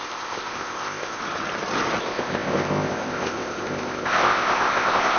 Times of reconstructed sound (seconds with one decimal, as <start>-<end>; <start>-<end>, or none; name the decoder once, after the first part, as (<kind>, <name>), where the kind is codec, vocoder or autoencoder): 0.0-1.2 (codec, ZipCodec); 2.0-5.2